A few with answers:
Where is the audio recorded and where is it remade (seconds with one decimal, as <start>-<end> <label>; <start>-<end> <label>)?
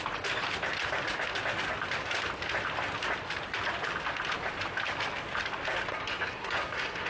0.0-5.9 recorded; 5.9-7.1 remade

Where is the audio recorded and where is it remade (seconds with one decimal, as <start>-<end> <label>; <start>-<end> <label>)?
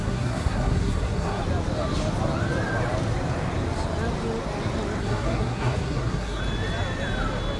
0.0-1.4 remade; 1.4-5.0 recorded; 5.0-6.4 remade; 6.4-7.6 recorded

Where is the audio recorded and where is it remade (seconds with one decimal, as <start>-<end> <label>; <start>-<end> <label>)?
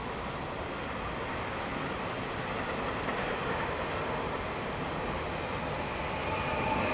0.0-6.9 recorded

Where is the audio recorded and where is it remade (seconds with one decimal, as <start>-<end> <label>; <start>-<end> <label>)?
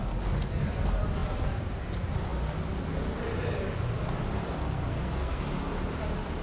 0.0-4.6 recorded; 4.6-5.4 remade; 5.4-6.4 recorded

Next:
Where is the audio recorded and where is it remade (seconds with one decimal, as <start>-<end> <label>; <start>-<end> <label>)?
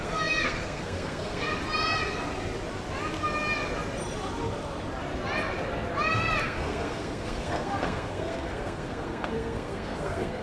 0.0-1.5 remade; 1.5-6.4 recorded; 6.4-10.4 remade